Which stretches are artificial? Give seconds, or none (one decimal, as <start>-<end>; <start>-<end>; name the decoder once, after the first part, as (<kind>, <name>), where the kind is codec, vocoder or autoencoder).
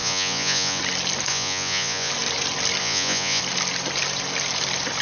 0.0-0.8 (vocoder, Vocos); 1.3-2.1; 2.8-3.4